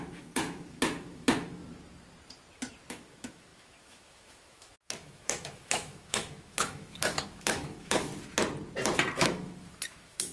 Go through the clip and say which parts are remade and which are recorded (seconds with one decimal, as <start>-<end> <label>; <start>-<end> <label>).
0.0-1.6 remade; 1.6-2.9 recorded; 2.9-8.1 remade; 8.1-9.2 recorded; 9.2-10.3 remade